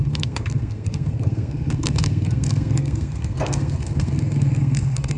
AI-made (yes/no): yes